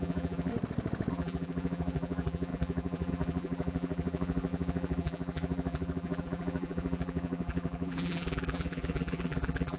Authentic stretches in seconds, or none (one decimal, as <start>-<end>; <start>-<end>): 0.5-1.1